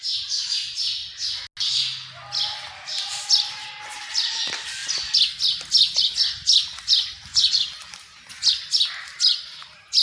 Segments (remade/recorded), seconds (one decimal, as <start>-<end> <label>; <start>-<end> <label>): 0.0-1.0 remade; 1.0-2.7 recorded; 2.7-4.8 remade; 4.8-6.8 recorded; 6.8-10.0 remade